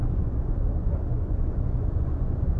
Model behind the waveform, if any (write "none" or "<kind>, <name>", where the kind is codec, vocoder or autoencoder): vocoder, Vocos